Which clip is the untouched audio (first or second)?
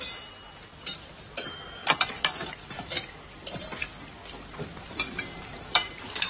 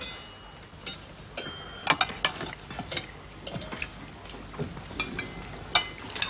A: second